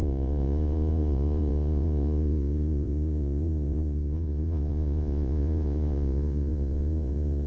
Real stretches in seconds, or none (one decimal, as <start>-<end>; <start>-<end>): none